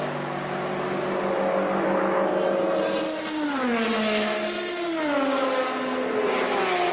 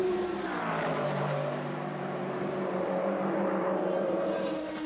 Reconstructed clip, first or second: second